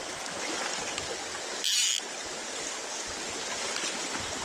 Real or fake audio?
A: real